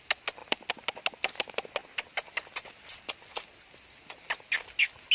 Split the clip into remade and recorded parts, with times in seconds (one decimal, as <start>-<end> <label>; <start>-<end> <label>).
0.0-5.1 recorded